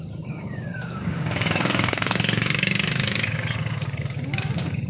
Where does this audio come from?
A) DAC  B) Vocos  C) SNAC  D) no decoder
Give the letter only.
A